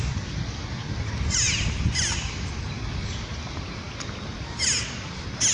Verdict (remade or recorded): recorded